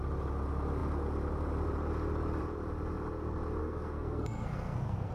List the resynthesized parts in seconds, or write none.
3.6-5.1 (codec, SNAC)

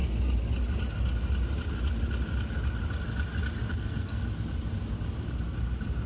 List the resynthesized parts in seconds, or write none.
3.7-4.2 (codec, SNAC)

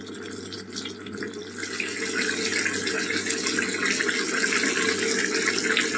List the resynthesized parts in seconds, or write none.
none